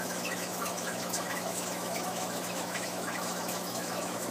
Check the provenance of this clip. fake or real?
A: fake